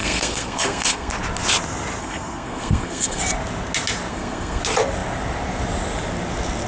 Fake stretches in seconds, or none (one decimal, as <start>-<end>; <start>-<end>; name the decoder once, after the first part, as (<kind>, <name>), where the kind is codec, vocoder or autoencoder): 0.0-1.1 (codec, SNAC); 2.0-3.2; 4.1-4.6